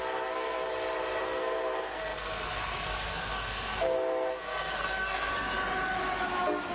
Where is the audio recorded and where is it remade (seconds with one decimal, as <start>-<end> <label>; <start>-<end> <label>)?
0.0-0.7 remade; 0.7-1.2 recorded; 1.2-5.3 remade; 5.3-6.7 recorded